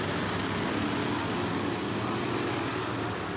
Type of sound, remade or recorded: recorded